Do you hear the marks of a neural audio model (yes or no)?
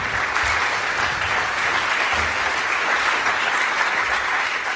no